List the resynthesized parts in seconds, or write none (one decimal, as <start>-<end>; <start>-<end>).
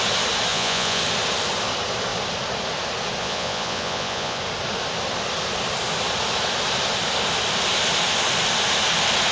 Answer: 0.5-1.0; 3.2-4.4